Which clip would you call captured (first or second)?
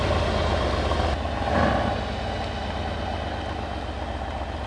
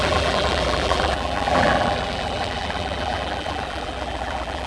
first